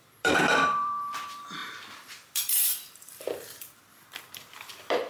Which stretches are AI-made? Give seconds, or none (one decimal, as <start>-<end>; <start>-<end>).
0.0-5.1